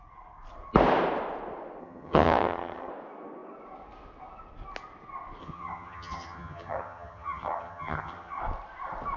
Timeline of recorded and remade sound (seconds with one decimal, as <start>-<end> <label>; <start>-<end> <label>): 0.0-1.8 recorded; 1.8-2.9 remade; 2.9-5.4 recorded; 5.4-8.4 remade; 8.4-9.2 recorded